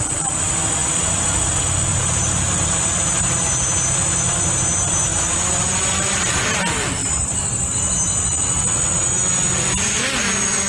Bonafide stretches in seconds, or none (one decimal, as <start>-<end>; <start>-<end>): 0.0-1.9; 2.7-5.1; 6.6-10.7